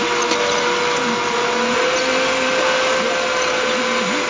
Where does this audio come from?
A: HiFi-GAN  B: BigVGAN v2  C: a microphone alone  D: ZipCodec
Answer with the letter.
C